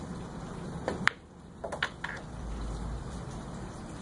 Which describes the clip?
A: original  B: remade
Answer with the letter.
B